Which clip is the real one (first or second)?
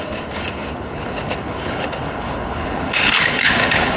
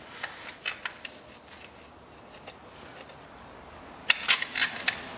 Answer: second